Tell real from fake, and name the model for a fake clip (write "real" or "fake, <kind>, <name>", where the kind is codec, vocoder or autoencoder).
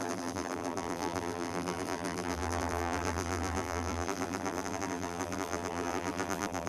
fake, vocoder, BigVGAN v2